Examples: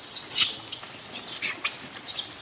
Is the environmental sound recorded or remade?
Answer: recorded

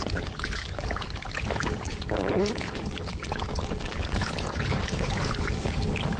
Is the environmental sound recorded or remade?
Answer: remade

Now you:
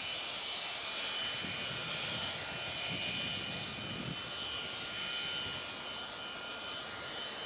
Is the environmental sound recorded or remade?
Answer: recorded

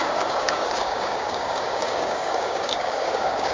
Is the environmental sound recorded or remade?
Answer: remade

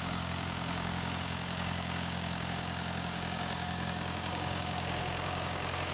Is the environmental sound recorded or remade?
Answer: remade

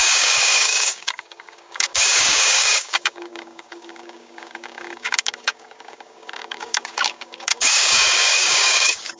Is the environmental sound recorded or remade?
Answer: remade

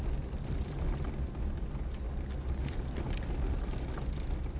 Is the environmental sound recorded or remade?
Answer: recorded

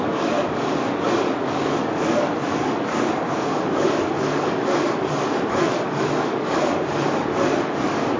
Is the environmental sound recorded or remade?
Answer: remade